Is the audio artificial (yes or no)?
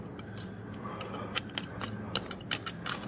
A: no